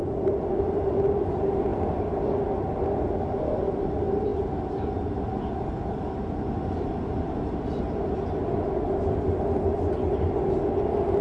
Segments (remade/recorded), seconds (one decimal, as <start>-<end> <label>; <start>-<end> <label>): 0.0-11.2 recorded